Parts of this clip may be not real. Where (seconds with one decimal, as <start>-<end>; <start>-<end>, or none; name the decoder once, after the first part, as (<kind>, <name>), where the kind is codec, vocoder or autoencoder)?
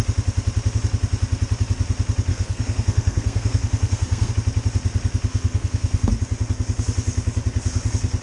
2.3-4.3 (codec, SNAC); 5.3-6.1